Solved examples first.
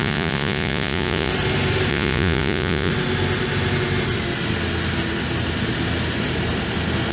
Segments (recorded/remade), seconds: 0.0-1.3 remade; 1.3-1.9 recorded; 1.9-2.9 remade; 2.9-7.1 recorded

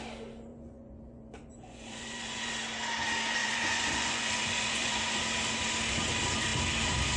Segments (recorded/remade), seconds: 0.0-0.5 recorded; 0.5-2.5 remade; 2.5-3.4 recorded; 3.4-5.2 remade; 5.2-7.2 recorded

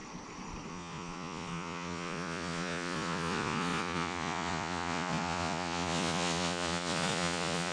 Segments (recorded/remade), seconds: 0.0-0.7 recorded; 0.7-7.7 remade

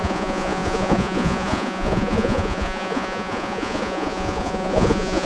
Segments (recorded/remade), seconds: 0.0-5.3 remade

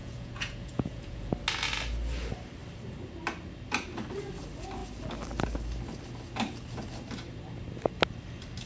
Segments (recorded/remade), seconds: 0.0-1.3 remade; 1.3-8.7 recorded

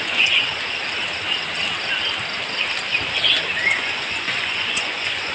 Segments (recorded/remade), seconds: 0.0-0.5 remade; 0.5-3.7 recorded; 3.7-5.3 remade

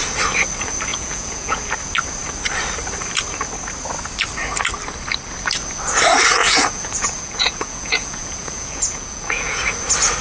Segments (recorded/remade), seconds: 0.0-0.9 recorded; 0.9-1.7 remade; 1.7-6.4 recorded; 6.4-9.7 remade; 9.7-10.2 recorded